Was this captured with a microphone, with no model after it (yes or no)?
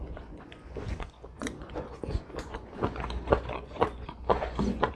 no